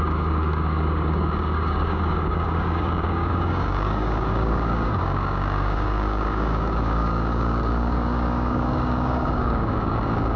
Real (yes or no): no